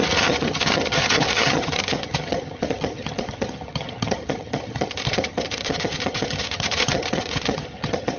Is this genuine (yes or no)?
no